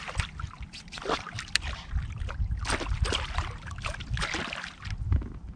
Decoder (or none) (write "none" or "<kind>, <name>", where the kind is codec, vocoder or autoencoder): none